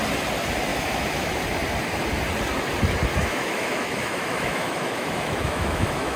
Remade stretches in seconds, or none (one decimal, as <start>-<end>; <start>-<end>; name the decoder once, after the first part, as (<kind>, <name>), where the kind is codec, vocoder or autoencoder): 0.7-1.3 (autoencoder, DAC-VAE); 3.1-6.2